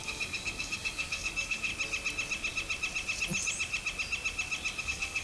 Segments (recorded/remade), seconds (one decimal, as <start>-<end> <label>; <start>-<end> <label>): 0.0-1.7 remade; 1.7-4.8 recorded; 4.8-5.2 remade